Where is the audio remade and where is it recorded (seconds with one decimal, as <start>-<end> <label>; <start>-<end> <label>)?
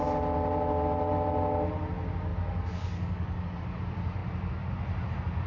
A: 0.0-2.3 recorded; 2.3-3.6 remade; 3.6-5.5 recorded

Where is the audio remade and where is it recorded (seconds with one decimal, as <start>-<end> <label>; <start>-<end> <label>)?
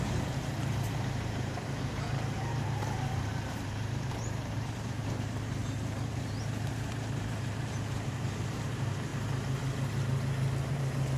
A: 0.0-9.1 remade; 9.1-10.7 recorded; 10.7-11.2 remade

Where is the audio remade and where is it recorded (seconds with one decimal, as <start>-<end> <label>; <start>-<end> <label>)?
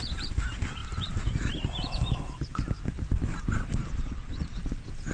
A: 0.0-3.8 recorded; 3.8-4.6 remade; 4.6-5.1 recorded